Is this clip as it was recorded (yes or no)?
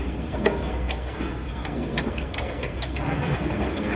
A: no